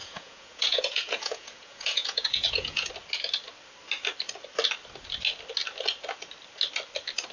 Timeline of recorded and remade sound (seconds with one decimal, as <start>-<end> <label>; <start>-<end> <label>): 0.0-2.9 remade; 2.9-7.3 recorded